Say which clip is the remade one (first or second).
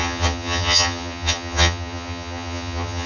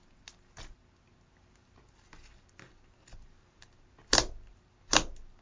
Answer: first